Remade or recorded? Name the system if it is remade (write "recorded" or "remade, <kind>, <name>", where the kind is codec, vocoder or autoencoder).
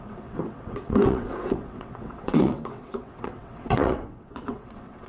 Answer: remade, vocoder, WaveNeXt